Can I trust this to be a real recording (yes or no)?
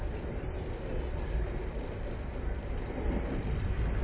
no